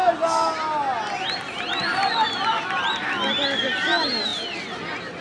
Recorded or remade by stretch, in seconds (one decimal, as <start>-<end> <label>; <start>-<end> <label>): 0.0-5.2 recorded